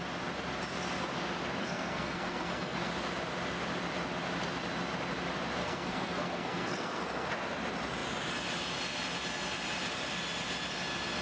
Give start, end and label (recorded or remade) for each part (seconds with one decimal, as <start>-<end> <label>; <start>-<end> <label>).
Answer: 0.0-1.6 recorded; 1.6-2.9 remade; 2.9-5.6 recorded; 5.6-7.3 remade; 7.3-11.2 recorded